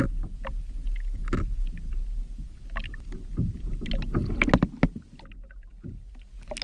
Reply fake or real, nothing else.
real